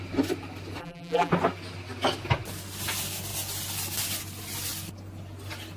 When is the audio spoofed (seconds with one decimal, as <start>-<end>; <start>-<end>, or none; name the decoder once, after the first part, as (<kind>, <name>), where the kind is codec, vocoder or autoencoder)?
0.8-1.3 (vocoder, BigVGAN v2)